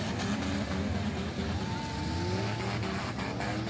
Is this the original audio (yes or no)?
yes